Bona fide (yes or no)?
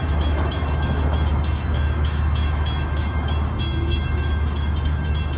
no